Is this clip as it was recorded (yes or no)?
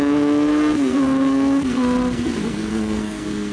no